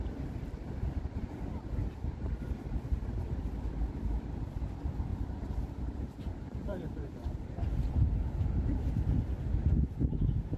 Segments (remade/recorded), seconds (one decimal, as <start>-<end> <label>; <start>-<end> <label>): 0.0-1.8 recorded; 1.8-2.4 remade; 2.4-5.1 recorded; 5.1-8.9 remade; 8.9-10.6 recorded